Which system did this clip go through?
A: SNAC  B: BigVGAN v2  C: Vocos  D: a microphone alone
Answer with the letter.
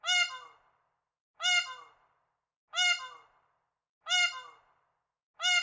D